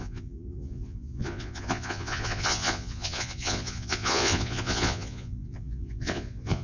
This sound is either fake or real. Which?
fake